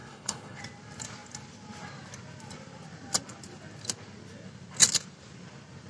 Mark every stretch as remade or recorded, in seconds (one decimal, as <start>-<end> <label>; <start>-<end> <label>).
0.0-0.6 remade; 0.6-5.9 recorded